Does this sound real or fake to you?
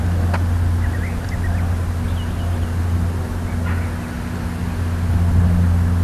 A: real